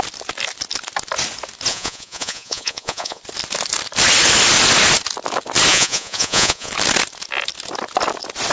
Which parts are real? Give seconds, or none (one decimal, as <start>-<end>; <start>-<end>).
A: 0.0-1.7; 3.2-5.7; 6.7-8.5